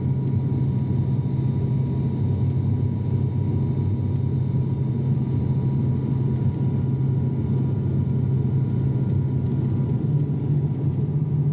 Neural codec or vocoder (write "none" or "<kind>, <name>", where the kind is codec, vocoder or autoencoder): none